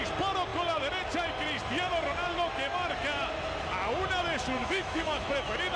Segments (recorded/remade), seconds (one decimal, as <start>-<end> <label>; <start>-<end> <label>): 0.0-4.6 recorded; 4.6-5.3 remade; 5.3-5.8 recorded

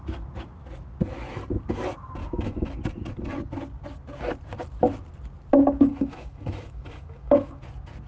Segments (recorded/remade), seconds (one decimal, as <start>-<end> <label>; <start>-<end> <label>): 0.0-2.2 recorded; 2.2-2.8 remade; 2.8-5.9 recorded; 5.9-7.6 remade; 7.6-8.1 recorded

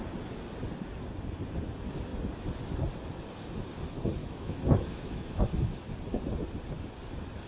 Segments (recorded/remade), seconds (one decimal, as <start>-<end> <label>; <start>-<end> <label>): 0.0-4.2 recorded; 4.2-5.8 remade; 5.8-7.5 recorded

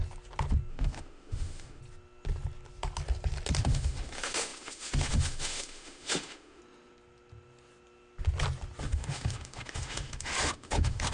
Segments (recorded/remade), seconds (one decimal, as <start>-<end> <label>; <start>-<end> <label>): 0.0-0.7 recorded; 0.7-1.8 remade; 1.8-3.6 recorded; 3.6-6.6 remade; 6.6-8.8 recorded; 8.8-11.1 remade

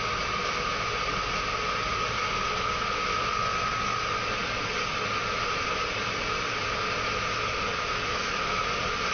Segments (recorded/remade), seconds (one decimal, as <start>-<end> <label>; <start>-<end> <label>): 0.0-7.7 recorded; 7.7-8.6 remade; 8.6-9.1 recorded